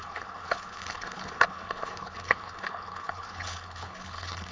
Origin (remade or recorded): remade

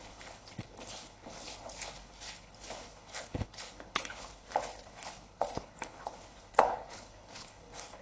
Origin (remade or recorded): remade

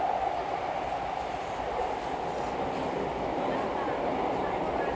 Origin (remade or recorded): recorded